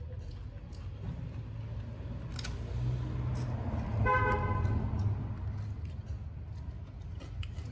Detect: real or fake real